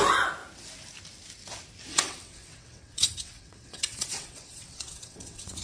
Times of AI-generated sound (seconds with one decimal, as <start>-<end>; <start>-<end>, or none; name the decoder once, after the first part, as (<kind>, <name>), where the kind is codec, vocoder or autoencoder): 1.9-5.6 (vocoder, WaveNeXt)